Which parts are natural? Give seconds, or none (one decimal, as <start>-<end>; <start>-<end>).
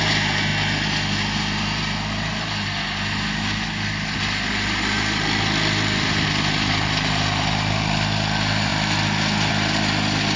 0.0-10.4